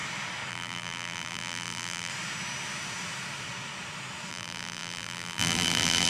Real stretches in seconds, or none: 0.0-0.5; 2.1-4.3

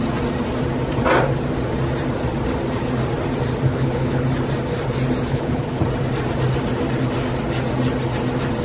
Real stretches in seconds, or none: 0.0-3.7; 4.2-5.3; 5.8-8.6

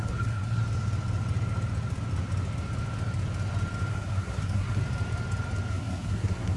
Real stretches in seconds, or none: 0.6-3.9; 4.8-5.7

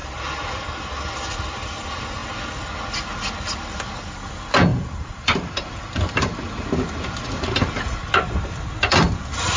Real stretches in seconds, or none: 0.9-4.7; 6.4-9.6

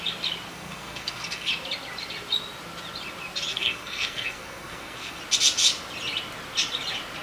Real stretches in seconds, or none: 0.0-0.5; 1.5-3.5; 5.2-7.2

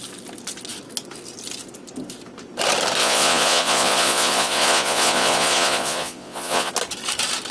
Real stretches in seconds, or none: 0.0-3.0; 6.7-7.5